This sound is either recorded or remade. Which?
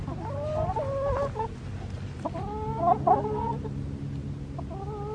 recorded